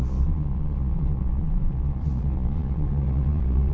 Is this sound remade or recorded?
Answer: remade